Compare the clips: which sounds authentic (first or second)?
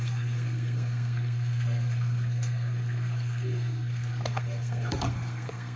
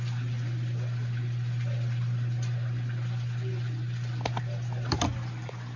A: second